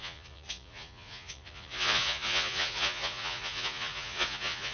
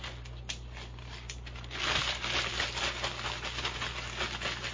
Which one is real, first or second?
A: second